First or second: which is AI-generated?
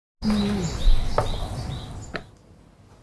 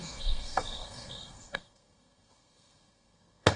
second